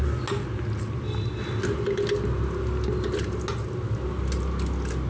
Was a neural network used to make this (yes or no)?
no